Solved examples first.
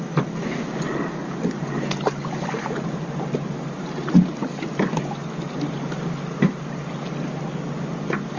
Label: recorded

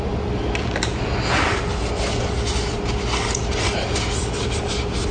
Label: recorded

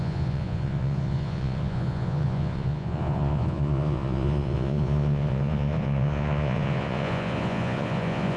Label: remade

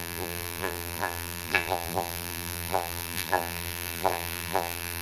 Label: remade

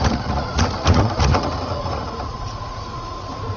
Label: remade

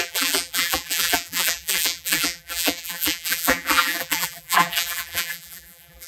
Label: remade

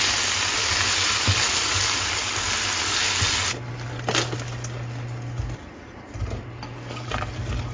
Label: recorded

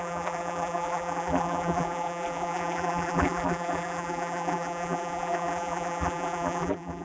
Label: remade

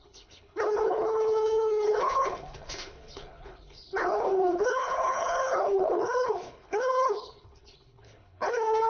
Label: remade